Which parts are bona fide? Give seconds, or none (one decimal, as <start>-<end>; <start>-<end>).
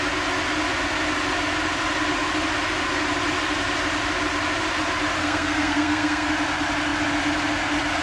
0.0-5.2; 6.3-8.0